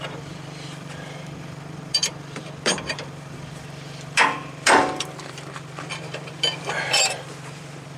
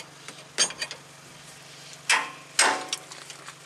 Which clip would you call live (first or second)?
second